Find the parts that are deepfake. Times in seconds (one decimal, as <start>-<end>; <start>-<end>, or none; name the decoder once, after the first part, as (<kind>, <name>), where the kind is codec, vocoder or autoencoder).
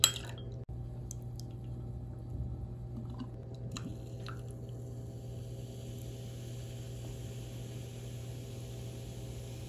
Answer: none